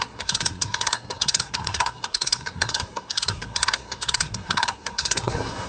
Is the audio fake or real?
fake